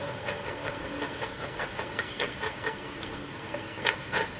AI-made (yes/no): yes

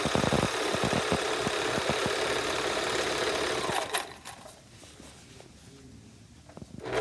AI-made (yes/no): no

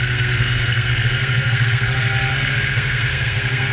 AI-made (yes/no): yes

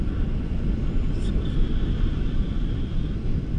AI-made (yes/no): no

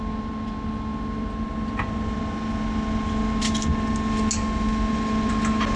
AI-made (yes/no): no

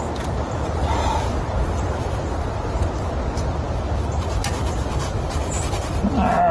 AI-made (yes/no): no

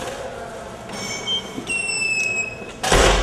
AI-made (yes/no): no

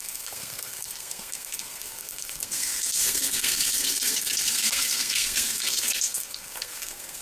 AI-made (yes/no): yes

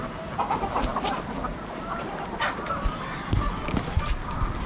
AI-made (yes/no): no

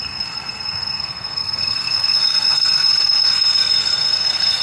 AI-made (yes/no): yes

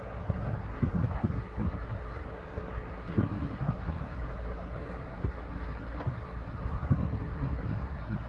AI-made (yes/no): yes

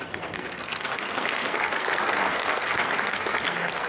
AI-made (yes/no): yes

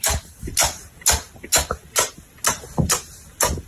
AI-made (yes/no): no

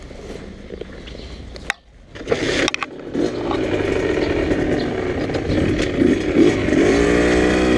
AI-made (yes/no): no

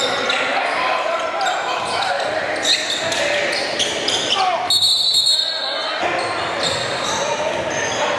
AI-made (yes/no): no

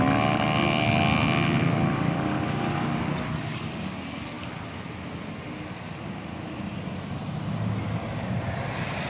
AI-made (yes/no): no